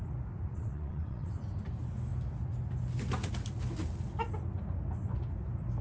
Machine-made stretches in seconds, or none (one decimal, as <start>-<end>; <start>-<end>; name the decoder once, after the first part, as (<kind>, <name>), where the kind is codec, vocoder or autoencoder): 0.5-1.3 (vocoder, WaveNeXt)